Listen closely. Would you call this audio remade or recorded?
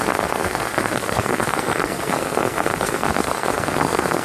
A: remade